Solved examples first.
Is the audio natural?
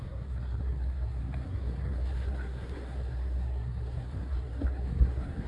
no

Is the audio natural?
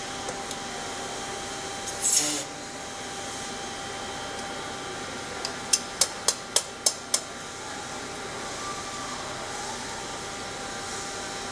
yes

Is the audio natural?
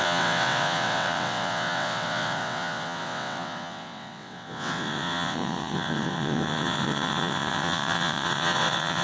no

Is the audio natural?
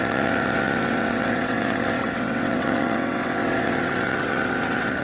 no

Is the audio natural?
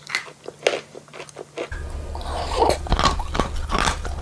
yes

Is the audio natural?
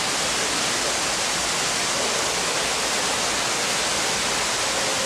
yes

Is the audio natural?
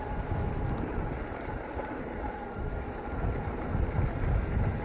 yes